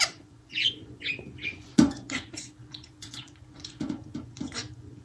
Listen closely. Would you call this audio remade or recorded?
remade